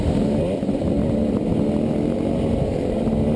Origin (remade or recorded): recorded